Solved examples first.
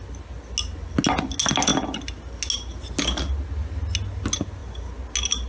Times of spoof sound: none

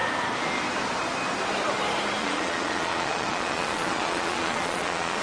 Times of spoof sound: 2.2-5.2

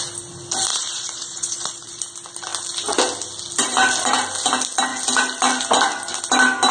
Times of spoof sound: 0.7-2.0

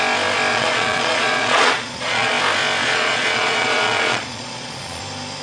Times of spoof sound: 0.5-2.3; 2.8-5.0

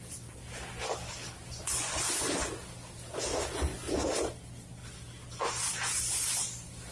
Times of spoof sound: 1.4-2.5

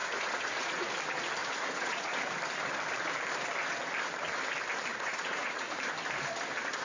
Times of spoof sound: 0.0-0.9; 1.4-2.4; 4.9-5.7